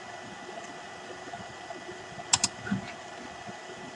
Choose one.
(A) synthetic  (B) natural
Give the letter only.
B